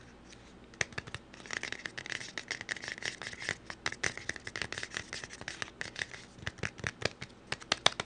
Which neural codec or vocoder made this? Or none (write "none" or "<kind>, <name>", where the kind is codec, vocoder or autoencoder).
none